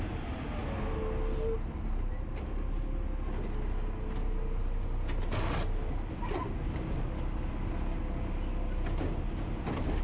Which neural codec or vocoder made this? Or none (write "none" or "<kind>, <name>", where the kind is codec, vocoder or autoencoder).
none